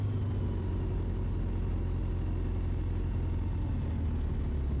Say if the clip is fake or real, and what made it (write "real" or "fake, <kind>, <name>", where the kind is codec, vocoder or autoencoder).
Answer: real